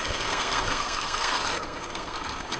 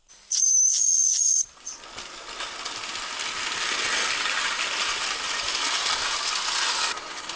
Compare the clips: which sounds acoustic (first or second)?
second